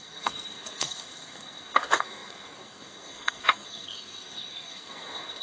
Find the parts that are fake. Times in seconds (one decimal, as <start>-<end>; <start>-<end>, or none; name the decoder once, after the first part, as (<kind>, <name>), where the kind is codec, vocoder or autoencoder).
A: 0.0-5.4 (codec, SNAC)